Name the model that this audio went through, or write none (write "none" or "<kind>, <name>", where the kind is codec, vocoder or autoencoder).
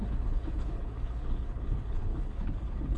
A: codec, HILCodec